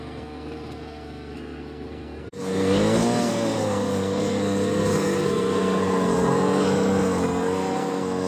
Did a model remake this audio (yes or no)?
yes